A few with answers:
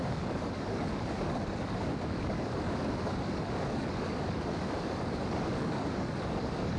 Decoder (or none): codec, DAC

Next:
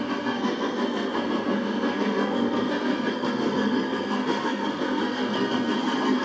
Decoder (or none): codec, SNAC